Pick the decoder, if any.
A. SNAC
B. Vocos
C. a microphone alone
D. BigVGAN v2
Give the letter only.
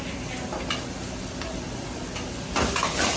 C